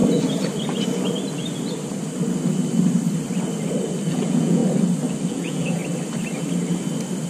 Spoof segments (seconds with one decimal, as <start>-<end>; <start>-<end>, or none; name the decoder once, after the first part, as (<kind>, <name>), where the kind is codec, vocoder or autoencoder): 4.1-4.6 (vocoder, Vocos); 5.3-5.8